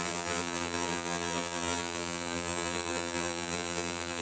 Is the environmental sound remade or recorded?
remade